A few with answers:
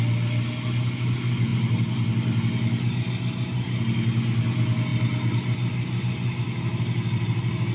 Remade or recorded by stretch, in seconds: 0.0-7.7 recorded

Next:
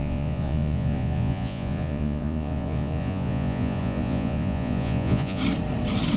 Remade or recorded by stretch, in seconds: 0.0-5.4 remade; 5.4-6.2 recorded

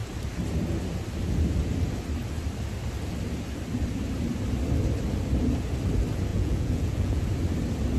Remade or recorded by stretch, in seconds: 0.0-6.3 recorded; 6.3-7.2 remade; 7.2-8.0 recorded

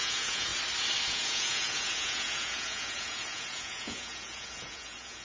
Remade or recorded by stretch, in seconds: 0.0-0.5 remade; 0.5-1.1 recorded; 1.1-5.2 remade

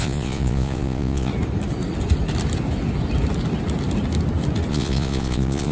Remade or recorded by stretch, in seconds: 0.0-1.3 remade; 1.3-4.7 recorded; 4.7-5.7 remade

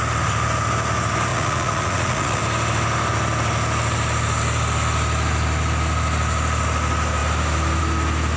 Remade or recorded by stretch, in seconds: 0.0-1.3 recorded; 1.3-2.4 remade; 2.4-8.4 recorded